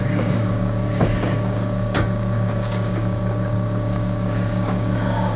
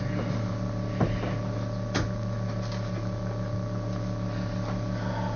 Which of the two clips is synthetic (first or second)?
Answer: first